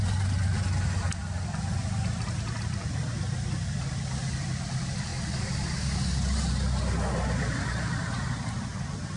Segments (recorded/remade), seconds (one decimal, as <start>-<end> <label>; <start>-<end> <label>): 0.0-9.2 recorded